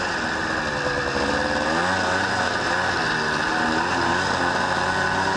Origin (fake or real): real